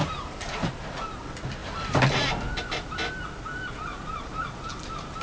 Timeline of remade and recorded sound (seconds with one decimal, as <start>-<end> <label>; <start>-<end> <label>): 0.0-1.0 remade; 1.0-1.6 recorded; 1.6-2.3 remade; 2.3-3.9 recorded; 3.9-4.7 remade; 4.7-5.2 recorded